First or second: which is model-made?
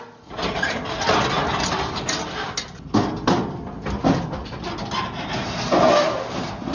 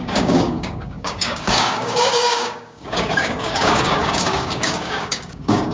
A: second